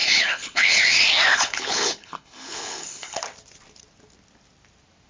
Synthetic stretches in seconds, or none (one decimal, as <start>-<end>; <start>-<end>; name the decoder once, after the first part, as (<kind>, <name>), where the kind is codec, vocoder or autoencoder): 0.0-0.8 (codec, HILCodec); 1.3-3.2

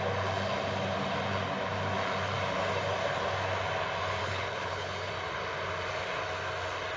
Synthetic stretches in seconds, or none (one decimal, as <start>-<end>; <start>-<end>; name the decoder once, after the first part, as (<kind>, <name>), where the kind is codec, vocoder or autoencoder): 4.2-5.1 (codec, HILCodec)

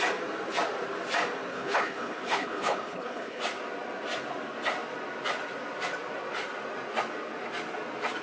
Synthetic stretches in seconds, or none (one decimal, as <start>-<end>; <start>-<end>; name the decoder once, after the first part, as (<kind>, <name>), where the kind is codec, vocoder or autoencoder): 1.5-3.4 (codec, HILCodec)

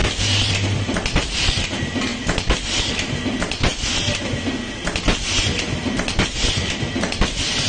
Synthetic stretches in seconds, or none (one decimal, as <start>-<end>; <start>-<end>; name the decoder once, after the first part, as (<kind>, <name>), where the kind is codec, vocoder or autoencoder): none

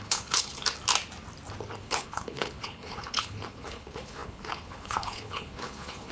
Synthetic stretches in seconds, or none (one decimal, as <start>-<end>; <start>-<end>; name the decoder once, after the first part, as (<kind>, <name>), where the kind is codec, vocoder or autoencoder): 0.0-0.6 (codec, HILCodec); 1.8-6.1

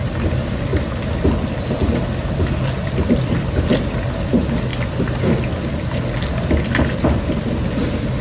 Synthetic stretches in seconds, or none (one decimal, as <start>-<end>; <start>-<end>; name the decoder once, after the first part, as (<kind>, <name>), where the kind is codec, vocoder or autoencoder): none

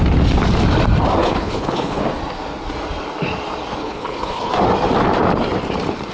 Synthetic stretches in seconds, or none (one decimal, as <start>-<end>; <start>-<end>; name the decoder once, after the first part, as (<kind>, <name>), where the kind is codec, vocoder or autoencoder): 1.2-2.0 (codec, HILCodec); 3.8-4.5